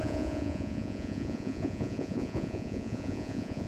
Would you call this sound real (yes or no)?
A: no